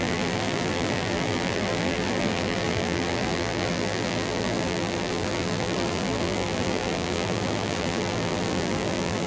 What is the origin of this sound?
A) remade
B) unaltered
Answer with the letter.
A